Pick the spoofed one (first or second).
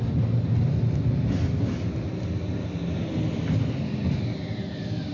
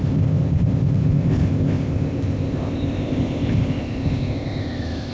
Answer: second